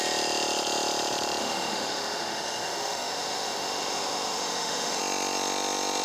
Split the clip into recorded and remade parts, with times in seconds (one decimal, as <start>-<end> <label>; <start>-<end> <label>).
0.0-1.4 recorded; 1.4-5.0 remade; 5.0-6.0 recorded